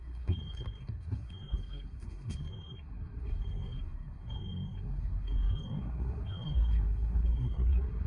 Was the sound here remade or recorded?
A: remade